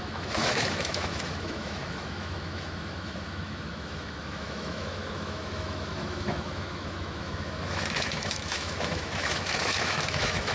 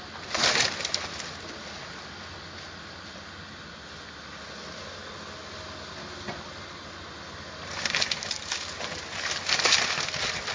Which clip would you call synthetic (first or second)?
first